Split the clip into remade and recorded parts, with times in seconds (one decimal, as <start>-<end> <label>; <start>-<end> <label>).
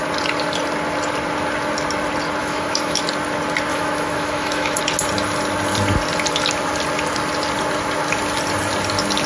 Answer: 0.0-2.4 recorded; 2.4-3.0 remade; 3.0-3.7 recorded; 3.7-4.8 remade; 4.8-9.3 recorded